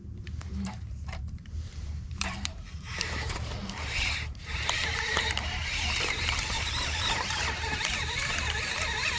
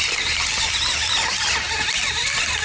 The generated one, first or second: first